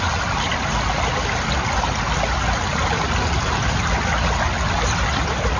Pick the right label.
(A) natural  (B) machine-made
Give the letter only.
A